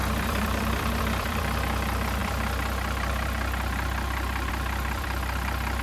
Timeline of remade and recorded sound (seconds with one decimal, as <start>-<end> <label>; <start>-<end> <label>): 0.0-5.8 remade